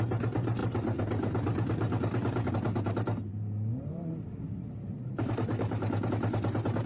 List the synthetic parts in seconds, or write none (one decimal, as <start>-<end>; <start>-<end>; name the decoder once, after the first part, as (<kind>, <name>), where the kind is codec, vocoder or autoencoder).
3.7-6.1 (vocoder, BigVGAN v2)

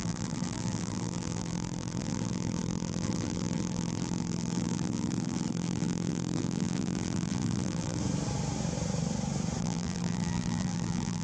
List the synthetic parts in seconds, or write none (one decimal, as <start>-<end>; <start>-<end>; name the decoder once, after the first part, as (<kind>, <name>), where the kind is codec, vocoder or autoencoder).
0.0-8.0 (vocoder, BigVGAN v2); 9.6-11.2

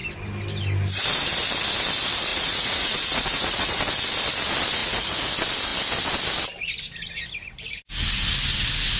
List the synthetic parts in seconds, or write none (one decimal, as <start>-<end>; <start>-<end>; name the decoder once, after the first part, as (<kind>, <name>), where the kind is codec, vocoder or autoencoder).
2.3-3.8 (vocoder, Vocos); 4.8-5.3